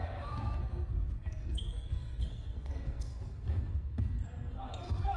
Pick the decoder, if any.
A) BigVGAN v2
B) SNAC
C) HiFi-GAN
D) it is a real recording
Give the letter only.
B